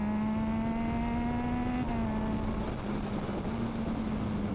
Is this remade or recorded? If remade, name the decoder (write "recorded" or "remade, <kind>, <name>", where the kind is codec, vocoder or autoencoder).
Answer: recorded